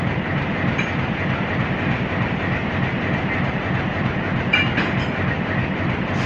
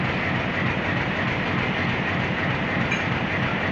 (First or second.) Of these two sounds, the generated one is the first